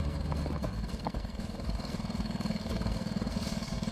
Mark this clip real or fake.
fake